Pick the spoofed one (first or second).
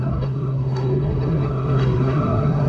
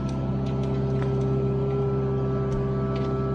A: first